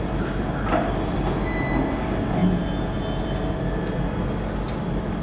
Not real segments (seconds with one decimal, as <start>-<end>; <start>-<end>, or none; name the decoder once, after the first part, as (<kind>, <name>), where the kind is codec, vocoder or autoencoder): none